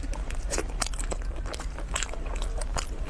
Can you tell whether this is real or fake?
real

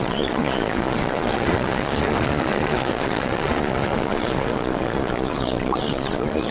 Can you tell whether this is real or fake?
fake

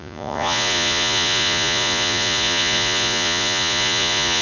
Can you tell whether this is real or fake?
fake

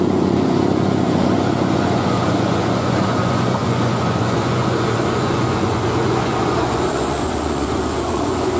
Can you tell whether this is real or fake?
fake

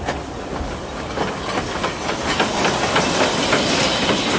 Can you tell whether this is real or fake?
real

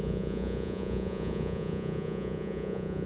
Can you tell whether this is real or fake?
fake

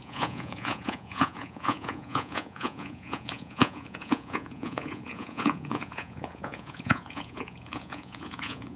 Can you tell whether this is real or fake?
fake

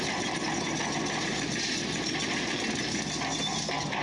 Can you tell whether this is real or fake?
real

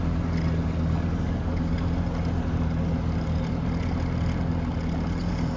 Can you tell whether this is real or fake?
real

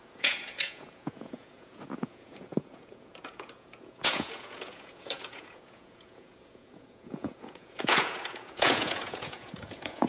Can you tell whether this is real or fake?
fake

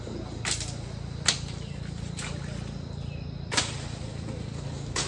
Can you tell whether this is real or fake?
real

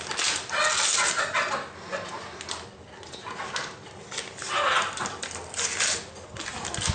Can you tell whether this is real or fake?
real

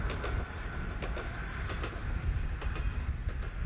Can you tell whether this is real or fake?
real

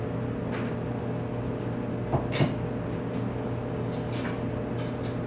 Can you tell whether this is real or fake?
real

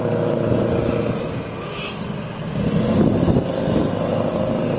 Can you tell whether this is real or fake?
real